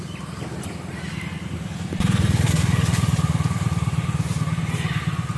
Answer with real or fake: real